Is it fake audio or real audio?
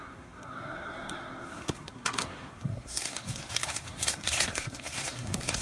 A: fake